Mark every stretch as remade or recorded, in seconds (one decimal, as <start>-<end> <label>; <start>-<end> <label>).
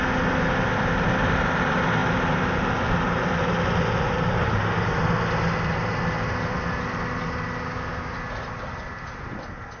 0.0-9.8 recorded